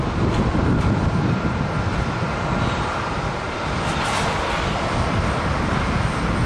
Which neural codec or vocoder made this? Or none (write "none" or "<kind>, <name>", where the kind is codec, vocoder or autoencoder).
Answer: none